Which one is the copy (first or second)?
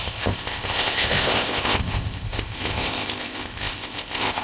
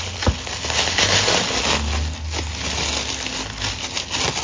first